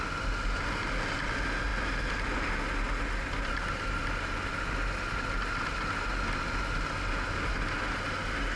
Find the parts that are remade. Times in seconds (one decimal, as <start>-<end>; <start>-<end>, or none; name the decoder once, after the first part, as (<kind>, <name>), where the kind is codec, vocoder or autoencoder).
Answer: none